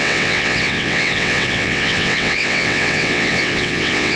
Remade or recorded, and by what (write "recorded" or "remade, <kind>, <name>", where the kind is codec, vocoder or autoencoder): remade, vocoder, WaveNeXt